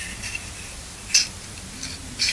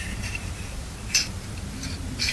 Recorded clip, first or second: first